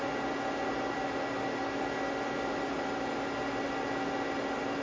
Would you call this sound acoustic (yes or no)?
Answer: yes